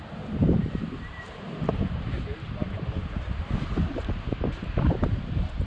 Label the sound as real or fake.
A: fake